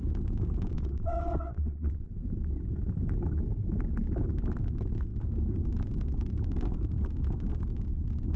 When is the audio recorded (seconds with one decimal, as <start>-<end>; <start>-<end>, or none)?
0.0-0.7; 2.1-8.4

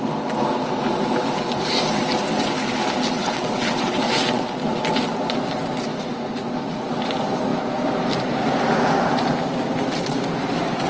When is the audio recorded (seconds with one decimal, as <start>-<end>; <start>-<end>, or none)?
0.0-3.2; 4.6-10.9

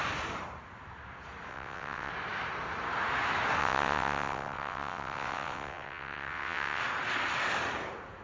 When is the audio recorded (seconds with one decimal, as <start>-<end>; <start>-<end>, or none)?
0.0-1.5; 2.1-3.6; 6.8-8.2